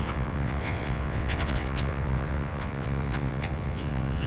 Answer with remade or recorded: remade